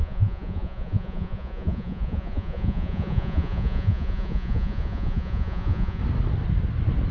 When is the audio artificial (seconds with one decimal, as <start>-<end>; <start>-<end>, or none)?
0.0-6.0